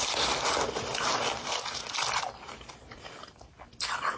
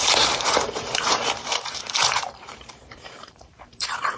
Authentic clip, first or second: first